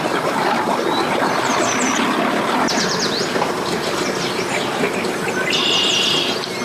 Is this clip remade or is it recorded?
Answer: recorded